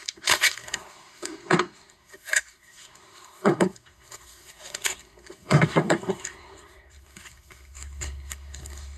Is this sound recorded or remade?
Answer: remade